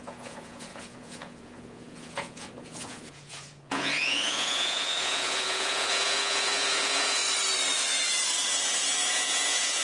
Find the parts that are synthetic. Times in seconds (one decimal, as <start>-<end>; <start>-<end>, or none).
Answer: 0.0-7.2; 9.1-9.8